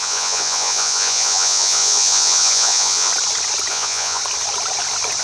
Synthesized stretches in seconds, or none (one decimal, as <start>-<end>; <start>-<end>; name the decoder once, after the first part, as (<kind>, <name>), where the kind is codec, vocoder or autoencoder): 0.0-3.1 (vocoder, Vocos); 3.7-4.2